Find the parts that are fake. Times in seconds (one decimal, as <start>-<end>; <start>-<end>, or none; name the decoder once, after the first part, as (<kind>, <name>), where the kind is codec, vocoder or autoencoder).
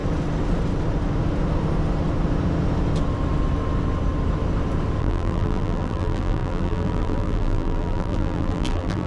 5.0-9.1 (vocoder, BigVGAN v2)